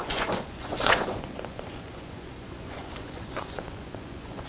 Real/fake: fake